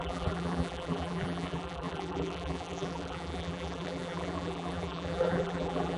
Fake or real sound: fake